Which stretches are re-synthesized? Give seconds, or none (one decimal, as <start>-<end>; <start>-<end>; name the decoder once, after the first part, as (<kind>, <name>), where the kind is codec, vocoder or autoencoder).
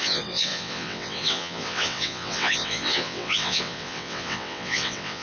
0.0-5.2 (vocoder, WaveNeXt)